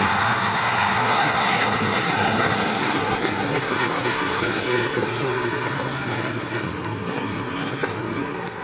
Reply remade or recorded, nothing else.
remade